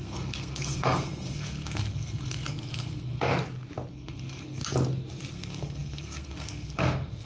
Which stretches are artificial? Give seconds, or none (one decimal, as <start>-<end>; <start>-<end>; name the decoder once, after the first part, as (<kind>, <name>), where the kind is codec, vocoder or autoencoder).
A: 0.0-3.3 (codec, SNAC); 3.9-4.6; 5.3-7.3